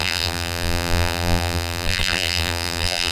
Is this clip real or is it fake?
fake